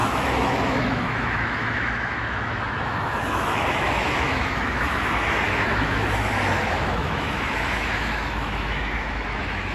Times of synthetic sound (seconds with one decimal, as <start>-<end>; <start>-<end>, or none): 0.0-9.7